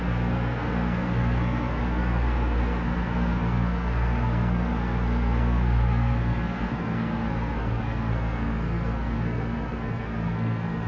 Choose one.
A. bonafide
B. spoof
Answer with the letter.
B